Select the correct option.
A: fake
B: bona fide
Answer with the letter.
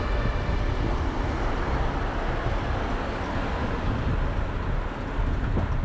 B